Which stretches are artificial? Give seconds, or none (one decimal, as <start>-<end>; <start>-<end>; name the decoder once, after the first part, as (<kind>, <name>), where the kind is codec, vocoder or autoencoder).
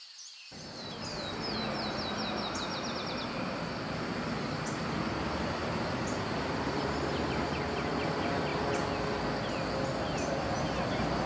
none